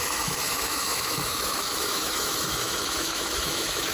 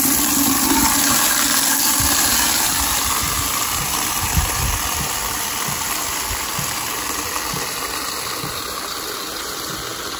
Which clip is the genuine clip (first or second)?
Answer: second